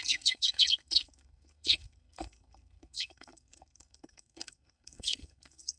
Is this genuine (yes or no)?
no